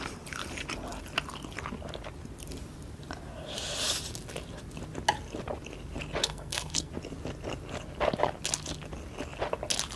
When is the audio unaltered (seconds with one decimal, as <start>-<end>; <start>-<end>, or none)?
0.0-6.2; 6.9-10.0